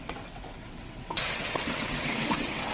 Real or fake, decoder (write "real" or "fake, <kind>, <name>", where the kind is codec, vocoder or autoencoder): fake, vocoder, WaveNeXt